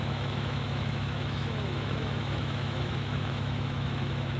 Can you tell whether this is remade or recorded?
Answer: remade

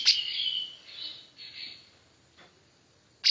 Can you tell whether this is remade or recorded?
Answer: recorded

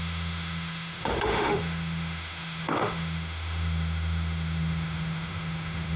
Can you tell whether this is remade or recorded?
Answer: remade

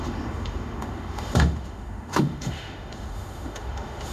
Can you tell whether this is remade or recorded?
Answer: remade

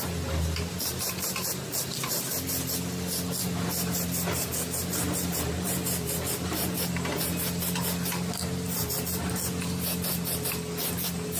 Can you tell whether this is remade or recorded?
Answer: recorded